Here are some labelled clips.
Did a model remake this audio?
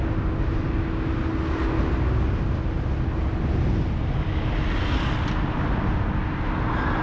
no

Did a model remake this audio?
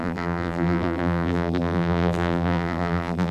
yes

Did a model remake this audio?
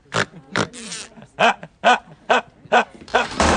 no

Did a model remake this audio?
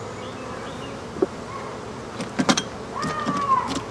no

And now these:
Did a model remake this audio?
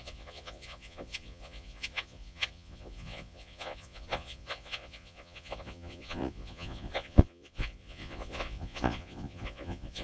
yes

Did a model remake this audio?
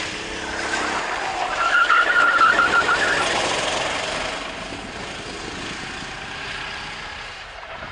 no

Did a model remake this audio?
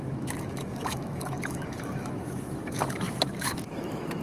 yes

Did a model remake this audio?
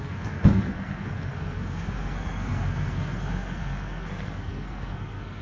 yes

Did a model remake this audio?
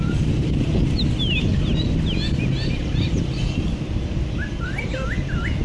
no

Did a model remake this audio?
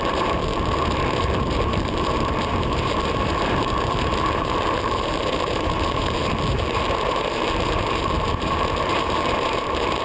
yes